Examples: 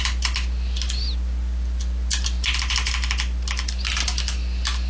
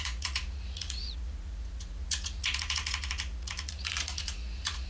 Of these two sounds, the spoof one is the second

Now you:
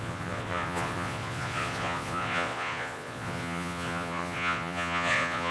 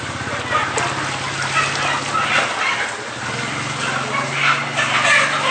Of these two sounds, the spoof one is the first